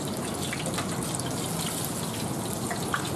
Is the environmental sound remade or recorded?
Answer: recorded